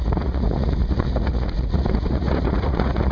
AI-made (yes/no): yes